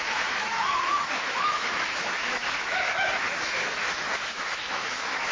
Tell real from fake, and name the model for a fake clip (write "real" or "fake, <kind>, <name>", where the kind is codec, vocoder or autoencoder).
fake, autoencoder, DAC-VAE